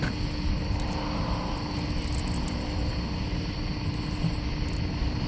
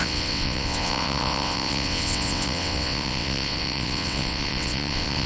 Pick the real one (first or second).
first